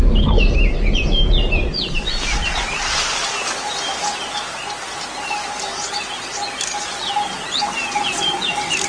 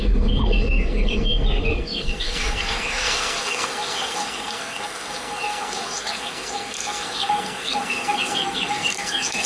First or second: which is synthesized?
second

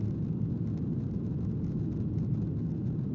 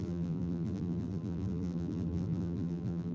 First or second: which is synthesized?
second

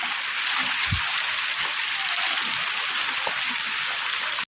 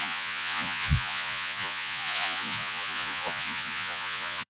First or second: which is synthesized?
second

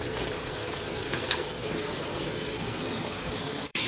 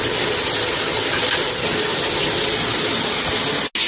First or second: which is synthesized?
first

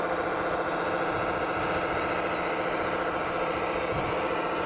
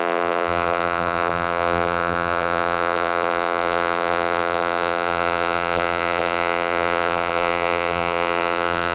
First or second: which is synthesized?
second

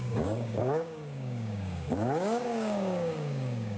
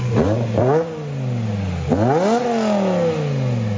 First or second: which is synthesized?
first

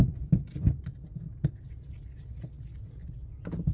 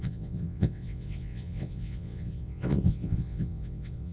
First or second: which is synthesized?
second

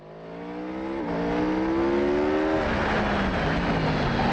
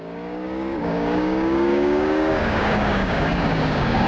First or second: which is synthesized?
second